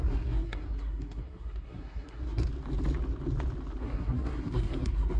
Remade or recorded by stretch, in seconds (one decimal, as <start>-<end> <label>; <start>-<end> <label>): 0.0-2.5 remade; 2.5-3.8 recorded; 3.8-5.2 remade